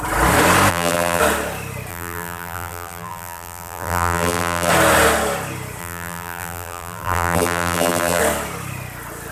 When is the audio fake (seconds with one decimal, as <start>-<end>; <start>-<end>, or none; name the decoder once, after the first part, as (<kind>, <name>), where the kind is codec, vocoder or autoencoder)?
0.7-1.2 (vocoder, BigVGAN v2); 1.9-4.7; 5.8-8.2